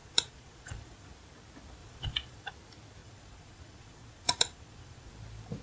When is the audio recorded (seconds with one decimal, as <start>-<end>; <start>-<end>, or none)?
1.1-1.8; 2.5-3.0; 5.1-5.6